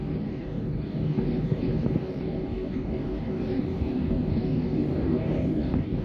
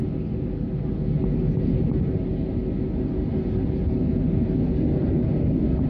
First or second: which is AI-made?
first